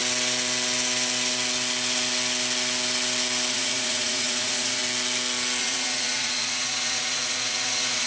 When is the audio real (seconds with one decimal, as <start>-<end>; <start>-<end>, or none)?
0.0-3.5; 4.8-5.6